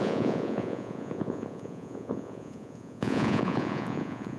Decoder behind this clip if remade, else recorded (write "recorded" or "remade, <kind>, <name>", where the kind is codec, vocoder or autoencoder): remade, vocoder, Vocos